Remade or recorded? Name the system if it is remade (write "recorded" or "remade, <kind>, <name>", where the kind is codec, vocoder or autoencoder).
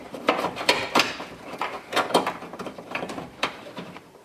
remade, vocoder, BigVGAN v2